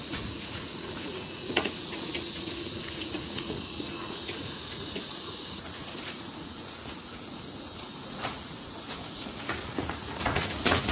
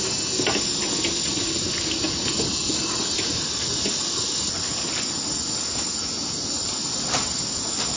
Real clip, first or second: second